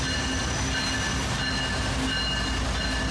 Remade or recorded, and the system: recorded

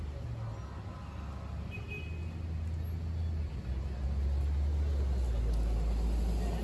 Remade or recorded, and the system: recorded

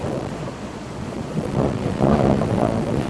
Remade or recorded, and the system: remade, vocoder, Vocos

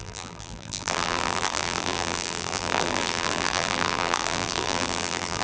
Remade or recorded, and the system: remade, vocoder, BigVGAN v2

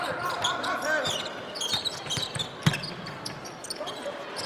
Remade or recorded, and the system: recorded